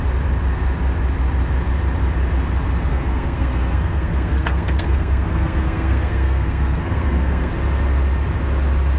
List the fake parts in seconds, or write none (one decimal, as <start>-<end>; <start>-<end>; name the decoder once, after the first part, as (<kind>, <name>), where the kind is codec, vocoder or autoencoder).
2.9-7.5 (codec, SNAC)